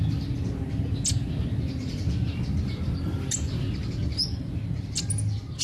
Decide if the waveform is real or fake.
real